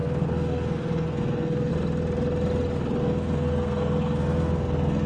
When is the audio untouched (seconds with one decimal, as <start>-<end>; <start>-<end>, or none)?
1.7-3.0